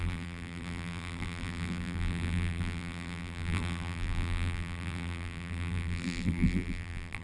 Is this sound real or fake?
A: fake